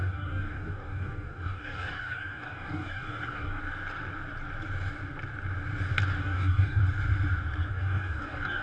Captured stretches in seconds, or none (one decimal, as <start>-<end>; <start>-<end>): 3.6-6.2; 6.8-7.7